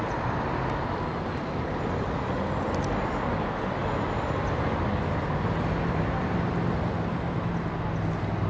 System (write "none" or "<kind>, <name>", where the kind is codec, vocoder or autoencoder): none